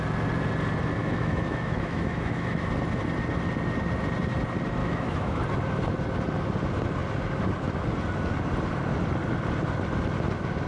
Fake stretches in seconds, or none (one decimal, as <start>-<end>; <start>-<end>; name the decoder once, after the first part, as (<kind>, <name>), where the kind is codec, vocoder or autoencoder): 1.0-2.7 (autoencoder, DAC-VAE); 4.8-5.4

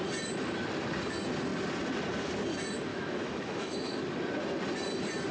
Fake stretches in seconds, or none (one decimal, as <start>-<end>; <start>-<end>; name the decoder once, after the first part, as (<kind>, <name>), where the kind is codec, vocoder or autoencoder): 2.9-4.0 (autoencoder, DAC-VAE)

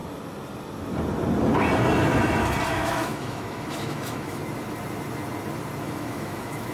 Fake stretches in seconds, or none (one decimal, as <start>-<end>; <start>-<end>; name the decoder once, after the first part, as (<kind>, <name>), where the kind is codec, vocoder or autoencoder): 2.7-4.4 (autoencoder, DAC-VAE); 5.8-6.7

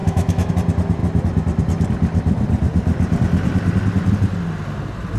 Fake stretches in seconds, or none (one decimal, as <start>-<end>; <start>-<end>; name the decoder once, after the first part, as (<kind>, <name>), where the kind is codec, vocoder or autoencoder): 0.0-0.5 (autoencoder, DAC-VAE)

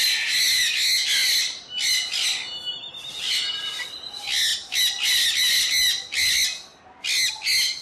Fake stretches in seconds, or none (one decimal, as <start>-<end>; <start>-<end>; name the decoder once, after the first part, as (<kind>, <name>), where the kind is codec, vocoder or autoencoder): none

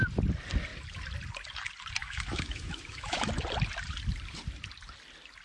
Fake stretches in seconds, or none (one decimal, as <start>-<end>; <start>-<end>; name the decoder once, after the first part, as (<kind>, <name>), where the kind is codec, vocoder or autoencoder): 2.0-3.3 (autoencoder, DAC-VAE)

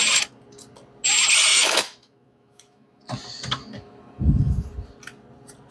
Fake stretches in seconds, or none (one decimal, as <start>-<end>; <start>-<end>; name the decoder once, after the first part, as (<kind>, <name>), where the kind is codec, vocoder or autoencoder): 1.5-3.0 (autoencoder, DAC-VAE)